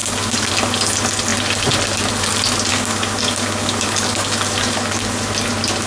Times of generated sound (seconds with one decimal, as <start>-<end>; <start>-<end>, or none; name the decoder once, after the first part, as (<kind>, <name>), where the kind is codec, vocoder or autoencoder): 0.0-0.5 (codec, DAC); 2.7-5.3